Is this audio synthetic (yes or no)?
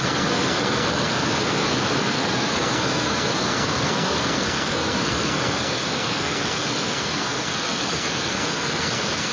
yes